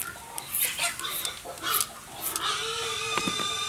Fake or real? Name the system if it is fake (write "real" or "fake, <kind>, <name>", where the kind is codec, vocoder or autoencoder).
real